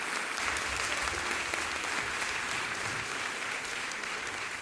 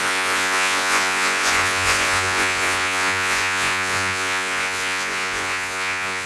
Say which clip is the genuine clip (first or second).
first